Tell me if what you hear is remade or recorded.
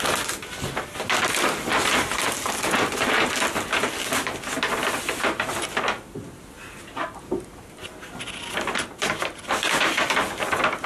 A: recorded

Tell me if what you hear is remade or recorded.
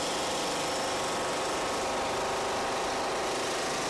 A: recorded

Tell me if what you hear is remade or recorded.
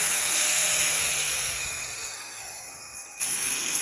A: remade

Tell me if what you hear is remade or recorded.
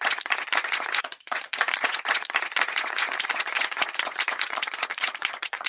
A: remade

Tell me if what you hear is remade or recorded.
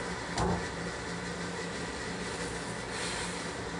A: recorded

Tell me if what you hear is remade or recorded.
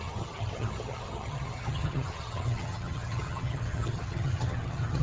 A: remade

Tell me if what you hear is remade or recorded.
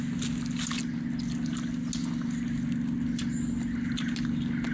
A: recorded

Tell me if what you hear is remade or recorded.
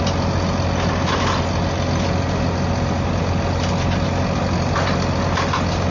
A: recorded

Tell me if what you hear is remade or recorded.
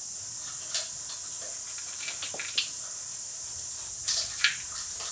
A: recorded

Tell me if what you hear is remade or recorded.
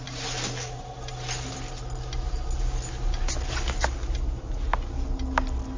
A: recorded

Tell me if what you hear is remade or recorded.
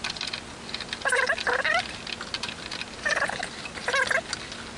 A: recorded